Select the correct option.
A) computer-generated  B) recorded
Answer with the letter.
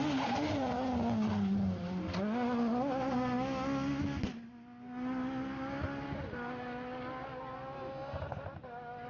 B